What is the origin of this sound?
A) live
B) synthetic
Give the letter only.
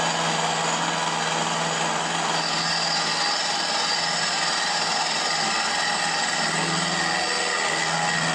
A